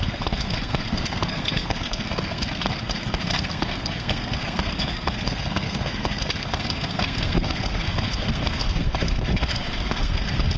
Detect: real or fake fake